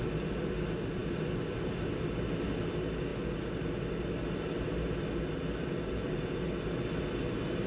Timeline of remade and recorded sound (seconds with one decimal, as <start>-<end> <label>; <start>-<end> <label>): 0.0-7.7 recorded